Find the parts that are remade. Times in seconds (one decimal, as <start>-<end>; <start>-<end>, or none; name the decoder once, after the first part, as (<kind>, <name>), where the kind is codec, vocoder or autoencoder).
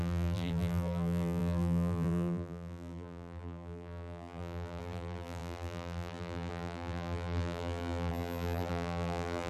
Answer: 0.0-9.5 (vocoder, BigVGAN v2)